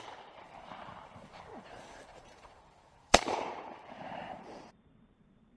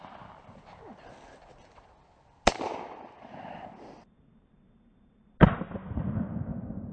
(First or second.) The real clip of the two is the second